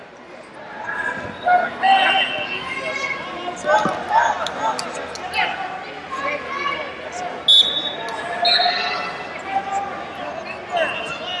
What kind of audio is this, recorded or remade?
recorded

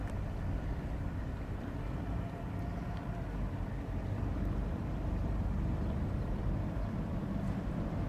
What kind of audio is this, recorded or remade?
remade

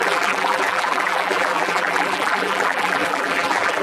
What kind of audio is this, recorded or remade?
remade